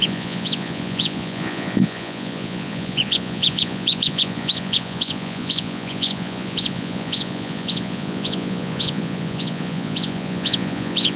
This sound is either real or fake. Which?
fake